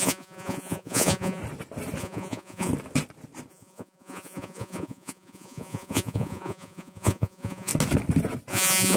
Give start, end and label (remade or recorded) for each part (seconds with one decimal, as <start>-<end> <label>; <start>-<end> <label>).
0.0-1.4 remade; 1.4-2.0 recorded; 2.0-2.7 remade; 2.7-3.5 recorded; 3.5-7.7 remade; 7.7-8.5 recorded; 8.5-9.0 remade